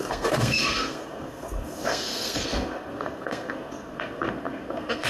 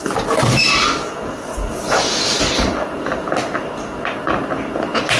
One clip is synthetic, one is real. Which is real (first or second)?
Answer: second